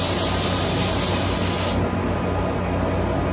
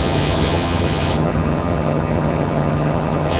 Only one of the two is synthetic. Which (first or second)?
second